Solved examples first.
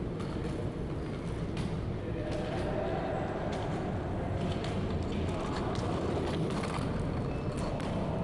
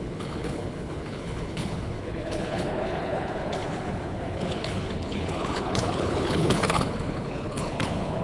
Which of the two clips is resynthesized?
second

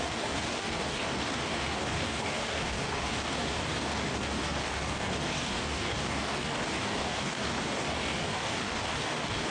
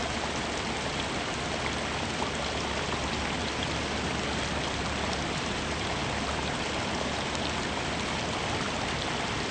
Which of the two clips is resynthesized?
first